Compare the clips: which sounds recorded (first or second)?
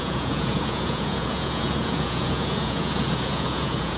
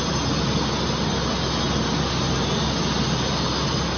second